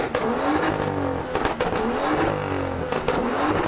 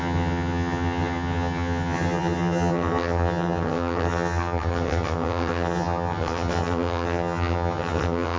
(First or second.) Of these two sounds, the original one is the first